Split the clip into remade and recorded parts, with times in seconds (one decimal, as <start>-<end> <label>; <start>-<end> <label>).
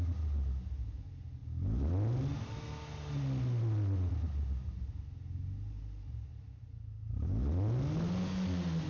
0.0-8.9 recorded